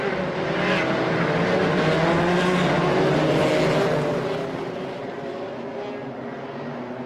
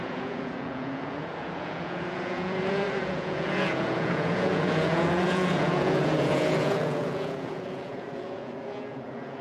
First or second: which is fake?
second